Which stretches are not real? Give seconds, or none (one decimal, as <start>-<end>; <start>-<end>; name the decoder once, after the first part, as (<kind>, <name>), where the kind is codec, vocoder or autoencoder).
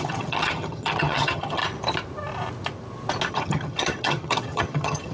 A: 0.0-1.6 (vocoder, HiFi-GAN); 3.3-5.1